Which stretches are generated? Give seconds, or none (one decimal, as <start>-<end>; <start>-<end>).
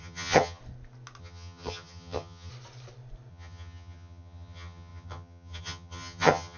0.0-0.6; 1.2-2.5; 3.3-6.6